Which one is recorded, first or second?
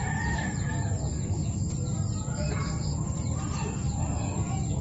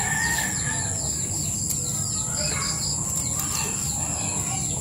second